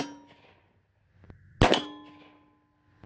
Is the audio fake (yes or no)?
no